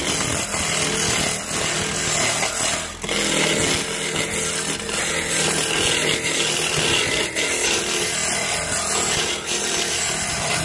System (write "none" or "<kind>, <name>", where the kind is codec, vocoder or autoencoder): none